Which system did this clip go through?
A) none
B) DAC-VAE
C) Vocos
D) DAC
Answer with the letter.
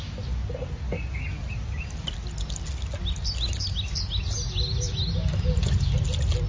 A